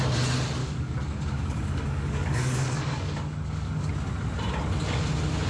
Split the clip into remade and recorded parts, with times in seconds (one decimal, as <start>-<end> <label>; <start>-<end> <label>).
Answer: 0.0-0.6 recorded; 0.6-3.9 remade; 3.9-5.5 recorded